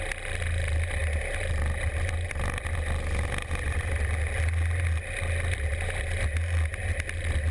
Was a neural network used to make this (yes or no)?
no